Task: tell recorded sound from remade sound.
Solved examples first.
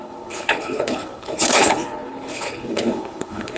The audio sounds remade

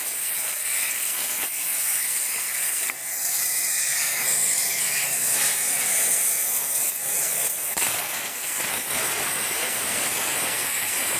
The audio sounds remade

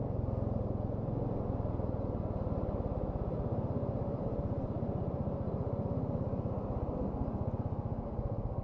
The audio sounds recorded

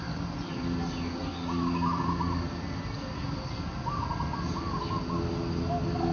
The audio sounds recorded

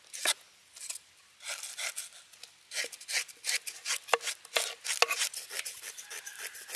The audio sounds recorded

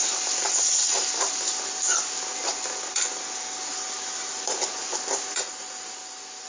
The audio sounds recorded